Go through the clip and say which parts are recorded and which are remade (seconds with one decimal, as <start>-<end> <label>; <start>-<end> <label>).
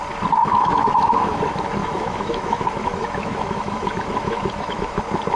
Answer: 0.0-0.4 recorded; 0.4-1.4 remade; 1.4-1.8 recorded; 1.8-5.0 remade; 5.0-5.4 recorded